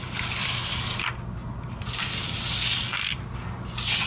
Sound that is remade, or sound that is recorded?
recorded